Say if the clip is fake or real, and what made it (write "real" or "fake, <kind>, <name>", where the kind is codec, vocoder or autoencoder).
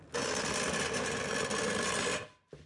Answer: real